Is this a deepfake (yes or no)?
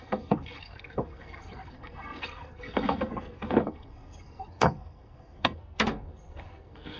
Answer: yes